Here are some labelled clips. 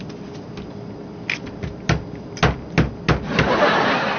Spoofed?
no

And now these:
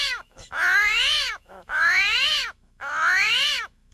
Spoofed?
yes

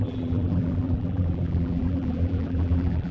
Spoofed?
yes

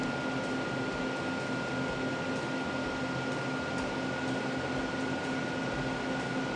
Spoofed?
no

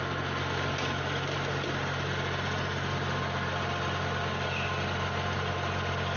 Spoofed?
no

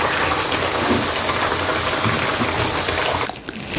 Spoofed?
no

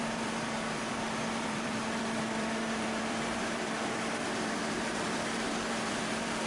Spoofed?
yes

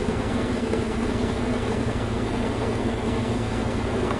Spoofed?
yes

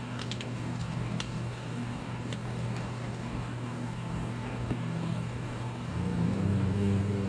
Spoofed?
yes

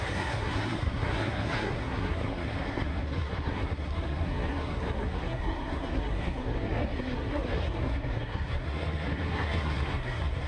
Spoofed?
yes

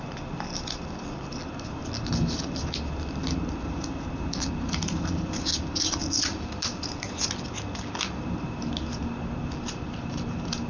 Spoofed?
no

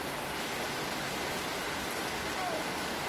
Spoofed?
no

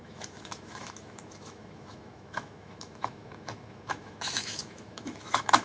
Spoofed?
yes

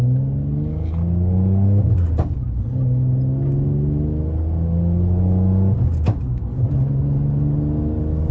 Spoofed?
no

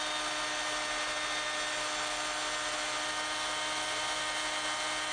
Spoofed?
no